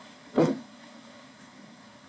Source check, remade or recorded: remade